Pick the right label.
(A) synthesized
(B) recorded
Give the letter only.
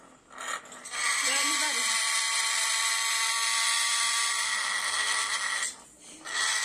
B